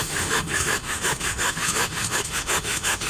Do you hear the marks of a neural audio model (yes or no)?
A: yes